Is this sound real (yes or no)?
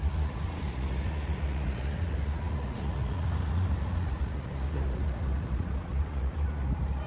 no